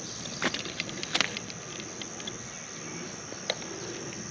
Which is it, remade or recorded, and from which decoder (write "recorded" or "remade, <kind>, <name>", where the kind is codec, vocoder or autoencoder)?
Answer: recorded